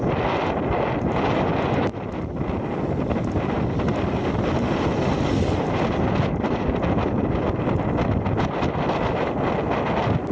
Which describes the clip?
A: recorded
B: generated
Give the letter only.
A